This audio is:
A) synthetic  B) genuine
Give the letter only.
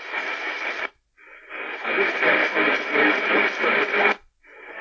B